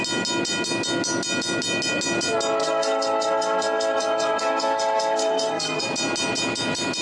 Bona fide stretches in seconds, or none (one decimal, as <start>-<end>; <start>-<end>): 0.0-2.6; 5.8-7.0